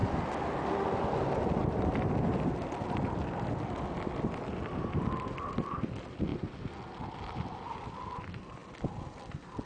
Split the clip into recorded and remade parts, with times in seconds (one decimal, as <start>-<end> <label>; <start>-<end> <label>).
0.0-9.7 recorded